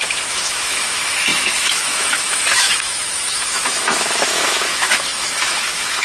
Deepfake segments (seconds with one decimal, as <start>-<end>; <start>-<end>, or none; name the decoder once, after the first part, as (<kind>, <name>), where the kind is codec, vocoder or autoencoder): 0.0-6.0 (autoencoder, DAC-VAE)